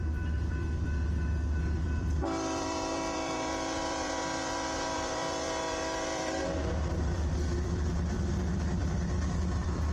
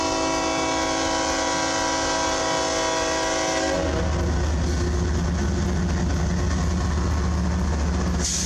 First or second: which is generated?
first